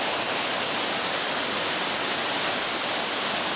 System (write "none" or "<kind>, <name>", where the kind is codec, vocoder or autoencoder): none